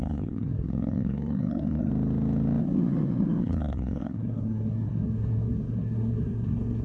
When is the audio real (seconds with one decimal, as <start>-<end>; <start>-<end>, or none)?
1.9-2.6